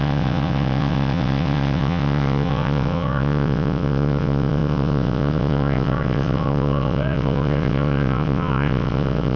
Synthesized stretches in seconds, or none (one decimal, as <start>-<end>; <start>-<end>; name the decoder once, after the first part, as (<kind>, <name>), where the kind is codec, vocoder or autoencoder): 0.0-9.4 (vocoder, WaveNeXt)